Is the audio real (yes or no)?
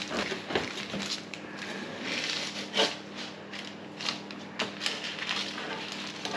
yes